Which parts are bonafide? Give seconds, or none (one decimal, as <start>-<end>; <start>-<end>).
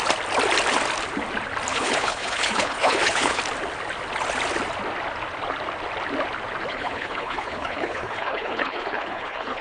0.0-1.7; 3.4-6.7